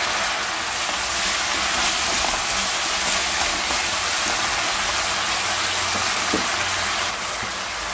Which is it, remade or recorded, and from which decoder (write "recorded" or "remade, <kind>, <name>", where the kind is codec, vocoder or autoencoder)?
recorded